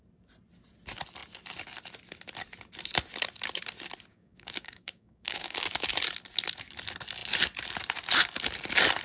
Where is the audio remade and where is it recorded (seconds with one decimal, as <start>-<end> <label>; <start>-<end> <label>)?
0.0-4.1 recorded; 4.1-5.9 remade; 5.9-9.0 recorded